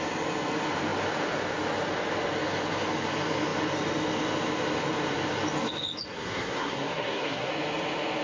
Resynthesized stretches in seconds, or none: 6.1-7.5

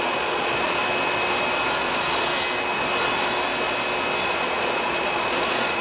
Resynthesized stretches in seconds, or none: 0.0-0.8; 1.7-2.3; 4.2-5.8

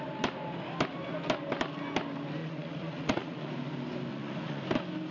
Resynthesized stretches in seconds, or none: 2.4-3.5; 4.1-4.6

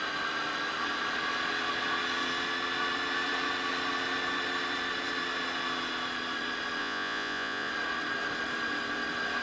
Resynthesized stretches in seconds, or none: 6.8-7.7

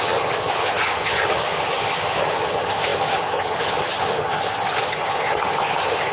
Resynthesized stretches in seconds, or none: 0.0-6.1

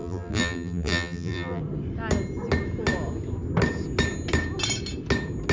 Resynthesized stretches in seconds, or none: 0.0-1.6

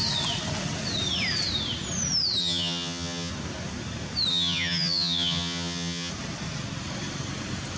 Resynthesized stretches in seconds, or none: 2.4-3.3; 4.3-6.1